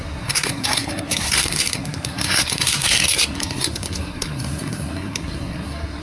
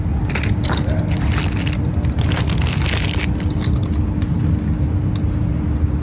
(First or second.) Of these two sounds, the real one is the second